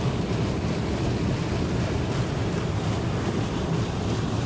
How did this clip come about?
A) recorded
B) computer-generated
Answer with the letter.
A